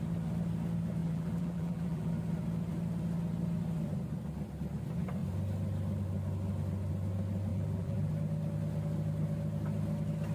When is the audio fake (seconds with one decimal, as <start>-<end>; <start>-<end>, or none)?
1.0-2.1; 7.5-8.1